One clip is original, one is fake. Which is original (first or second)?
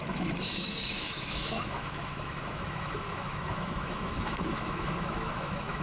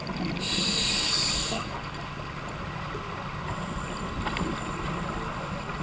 second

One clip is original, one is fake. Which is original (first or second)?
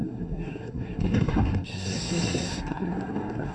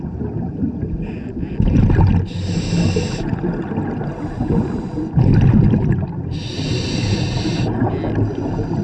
second